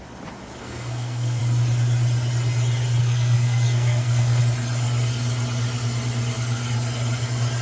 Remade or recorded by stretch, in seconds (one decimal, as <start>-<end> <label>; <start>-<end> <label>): 0.0-0.6 recorded; 0.6-1.4 remade; 1.4-3.0 recorded; 3.0-4.4 remade; 4.4-7.6 recorded